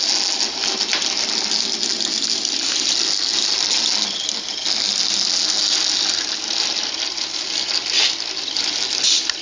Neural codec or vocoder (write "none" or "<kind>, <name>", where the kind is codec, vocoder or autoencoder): none